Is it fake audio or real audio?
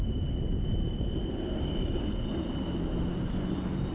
real